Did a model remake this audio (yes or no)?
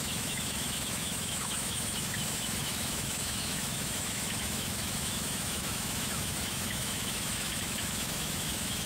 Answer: yes